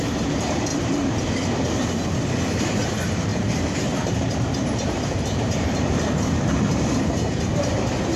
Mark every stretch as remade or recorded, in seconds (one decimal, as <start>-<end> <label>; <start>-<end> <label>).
0.0-0.7 remade; 0.7-2.6 recorded; 2.6-8.2 remade